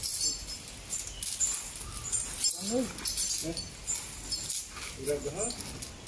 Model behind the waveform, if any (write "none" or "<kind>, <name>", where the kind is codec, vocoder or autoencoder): none